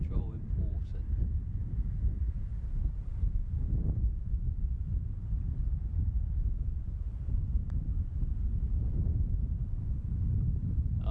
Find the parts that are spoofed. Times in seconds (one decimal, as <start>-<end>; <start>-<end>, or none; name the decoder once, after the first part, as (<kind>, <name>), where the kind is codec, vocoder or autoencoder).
0.0-7.9 (vocoder, BigVGAN v2); 8.8-11.1